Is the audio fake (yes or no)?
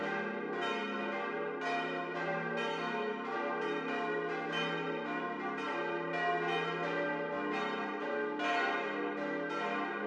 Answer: no